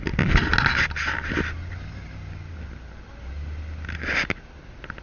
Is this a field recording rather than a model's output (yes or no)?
yes